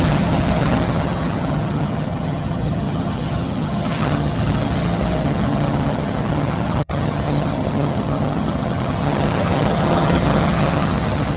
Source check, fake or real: fake